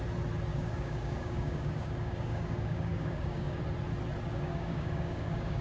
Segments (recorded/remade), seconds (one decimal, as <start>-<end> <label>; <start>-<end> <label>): 0.0-0.5 recorded; 0.5-3.6 remade; 3.6-4.3 recorded; 4.3-5.6 remade